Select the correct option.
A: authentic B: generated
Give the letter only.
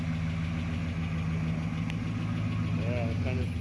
A